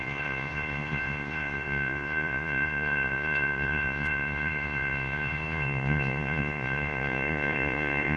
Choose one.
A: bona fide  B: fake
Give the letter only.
B